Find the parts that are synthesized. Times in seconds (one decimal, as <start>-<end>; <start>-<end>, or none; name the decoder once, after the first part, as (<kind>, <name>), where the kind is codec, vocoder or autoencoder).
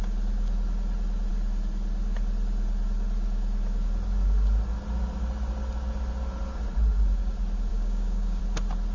7.7-8.4 (codec, DAC)